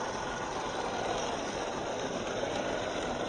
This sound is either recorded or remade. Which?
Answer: recorded